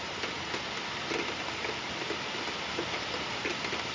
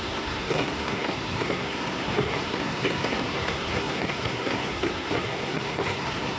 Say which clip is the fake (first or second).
second